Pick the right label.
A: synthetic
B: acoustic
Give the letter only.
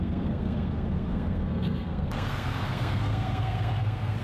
A